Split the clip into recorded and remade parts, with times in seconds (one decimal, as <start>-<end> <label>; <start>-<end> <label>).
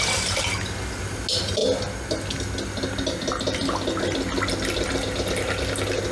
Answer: 0.0-6.1 recorded